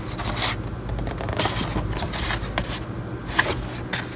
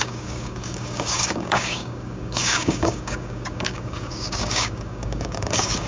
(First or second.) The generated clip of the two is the second